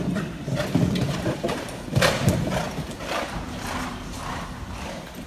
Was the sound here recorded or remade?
remade